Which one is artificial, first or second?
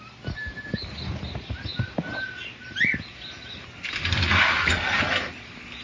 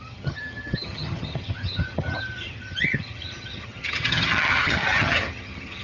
second